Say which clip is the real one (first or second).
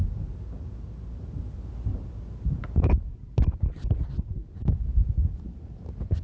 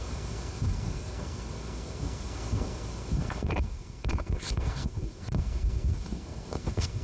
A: first